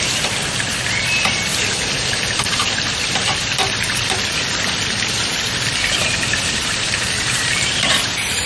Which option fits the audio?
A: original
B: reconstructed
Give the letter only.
B